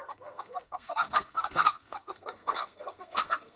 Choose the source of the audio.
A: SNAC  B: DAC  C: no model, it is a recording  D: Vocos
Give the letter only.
A